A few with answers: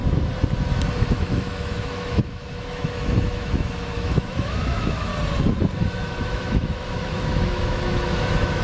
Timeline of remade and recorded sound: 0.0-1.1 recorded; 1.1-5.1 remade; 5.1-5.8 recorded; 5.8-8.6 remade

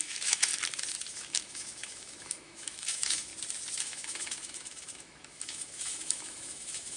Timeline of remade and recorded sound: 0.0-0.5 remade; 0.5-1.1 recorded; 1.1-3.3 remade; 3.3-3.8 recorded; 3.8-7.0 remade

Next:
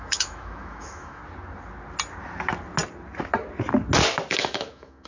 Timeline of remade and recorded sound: 0.0-1.2 remade; 1.2-4.3 recorded; 4.3-5.1 remade

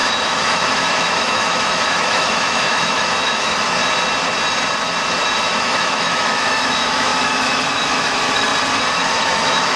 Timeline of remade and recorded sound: 0.0-3.8 remade; 3.8-5.6 recorded; 5.6-8.5 remade; 8.5-9.2 recorded; 9.2-9.8 remade